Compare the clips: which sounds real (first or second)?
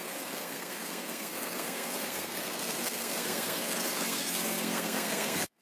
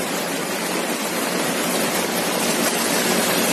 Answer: second